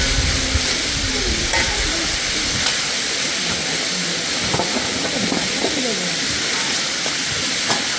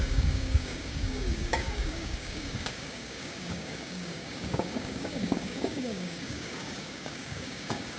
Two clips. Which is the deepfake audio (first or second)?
second